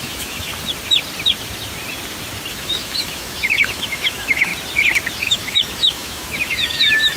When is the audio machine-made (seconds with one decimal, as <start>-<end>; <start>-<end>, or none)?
0.0-0.5; 2.5-4.5; 5.2-7.2